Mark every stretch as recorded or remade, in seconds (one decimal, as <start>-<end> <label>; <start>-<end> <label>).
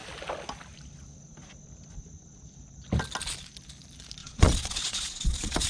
0.0-4.2 recorded; 4.2-5.7 remade